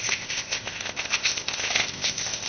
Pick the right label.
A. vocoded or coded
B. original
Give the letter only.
A